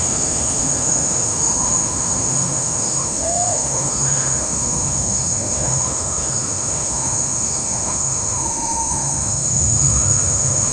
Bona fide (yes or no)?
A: no